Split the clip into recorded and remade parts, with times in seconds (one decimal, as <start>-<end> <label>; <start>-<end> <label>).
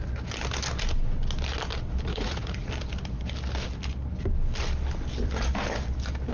0.0-2.1 recorded; 2.1-2.7 remade; 2.7-6.3 recorded